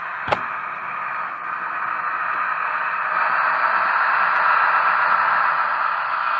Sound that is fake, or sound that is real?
real